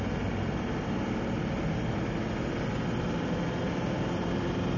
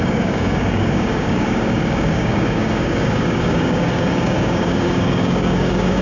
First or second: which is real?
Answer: first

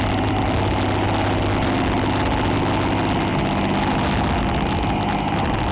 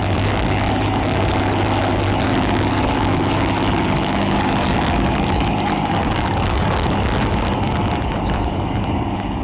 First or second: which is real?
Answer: first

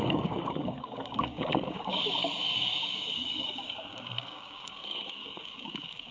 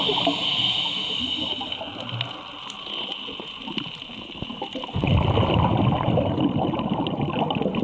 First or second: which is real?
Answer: second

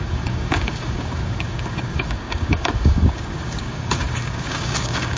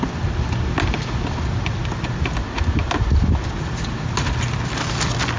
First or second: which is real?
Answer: second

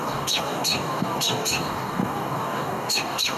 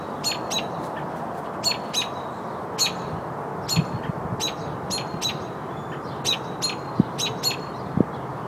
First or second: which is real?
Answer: second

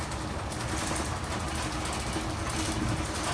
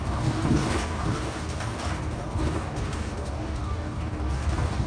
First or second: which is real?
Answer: first